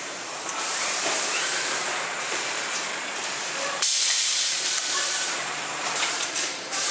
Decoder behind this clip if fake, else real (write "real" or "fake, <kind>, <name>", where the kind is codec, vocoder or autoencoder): fake, vocoder, BigVGAN v2